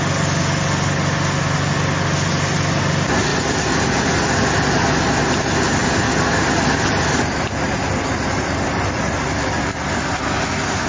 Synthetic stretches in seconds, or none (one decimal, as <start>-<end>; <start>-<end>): none

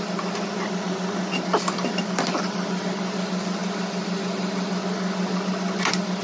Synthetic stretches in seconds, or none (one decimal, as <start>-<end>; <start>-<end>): none

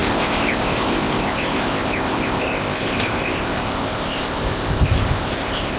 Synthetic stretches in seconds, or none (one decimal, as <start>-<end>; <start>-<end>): 0.0-5.8

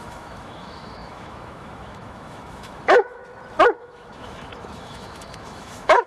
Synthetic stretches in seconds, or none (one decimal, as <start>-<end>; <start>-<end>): 0.0-3.2; 3.8-6.1

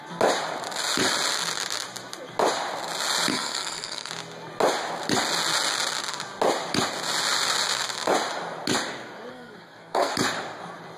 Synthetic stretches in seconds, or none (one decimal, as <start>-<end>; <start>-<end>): 3.3-4.1; 9.3-10.1

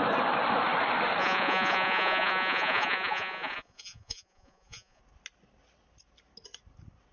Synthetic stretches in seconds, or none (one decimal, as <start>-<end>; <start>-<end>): 1.2-5.0